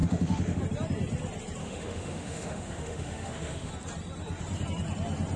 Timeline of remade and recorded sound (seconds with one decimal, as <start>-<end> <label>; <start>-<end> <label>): 0.0-0.6 remade; 0.6-1.6 recorded; 1.6-3.7 remade; 3.7-5.4 recorded

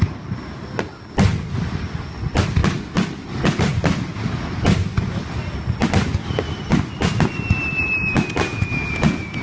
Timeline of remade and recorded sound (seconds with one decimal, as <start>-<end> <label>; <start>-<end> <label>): 0.0-8.5 recorded; 8.5-9.4 remade

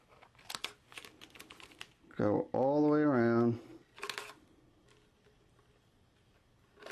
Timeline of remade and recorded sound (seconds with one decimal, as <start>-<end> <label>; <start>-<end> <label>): 0.0-6.9 recorded

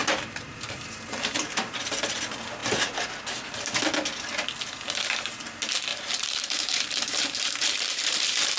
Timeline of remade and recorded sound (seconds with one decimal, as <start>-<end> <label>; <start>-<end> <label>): 0.0-2.0 remade; 2.0-5.9 recorded; 5.9-8.6 remade

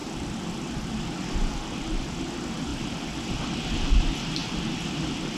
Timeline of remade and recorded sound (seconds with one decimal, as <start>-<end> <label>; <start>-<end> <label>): 0.0-4.4 remade; 4.4-4.9 recorded; 4.9-5.4 remade

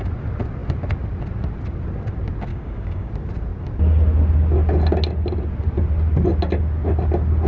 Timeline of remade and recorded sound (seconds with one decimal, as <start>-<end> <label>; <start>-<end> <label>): 0.0-2.5 recorded; 2.5-3.1 remade; 3.1-7.5 recorded

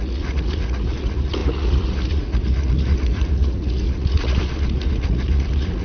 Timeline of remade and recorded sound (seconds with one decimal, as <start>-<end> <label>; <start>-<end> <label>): 0.0-5.8 remade